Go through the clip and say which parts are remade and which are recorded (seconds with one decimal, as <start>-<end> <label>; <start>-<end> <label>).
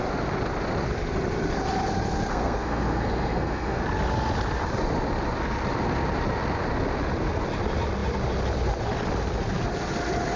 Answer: 0.0-2.3 recorded; 2.3-3.8 remade; 3.8-10.4 recorded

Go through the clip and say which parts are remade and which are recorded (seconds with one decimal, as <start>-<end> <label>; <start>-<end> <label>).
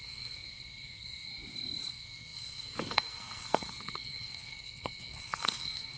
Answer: 0.0-1.3 remade; 1.3-1.9 recorded; 1.9-6.0 remade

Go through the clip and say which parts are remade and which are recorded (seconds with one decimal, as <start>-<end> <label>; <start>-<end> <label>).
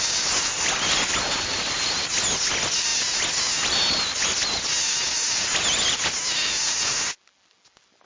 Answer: 0.0-8.1 recorded